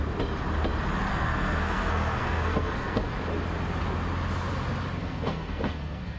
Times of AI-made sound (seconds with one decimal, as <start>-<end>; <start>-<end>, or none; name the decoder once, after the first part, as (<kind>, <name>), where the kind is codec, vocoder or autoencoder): 1.1-3.1 (codec, SNAC); 5.0-6.2